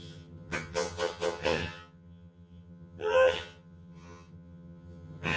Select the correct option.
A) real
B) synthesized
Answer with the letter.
B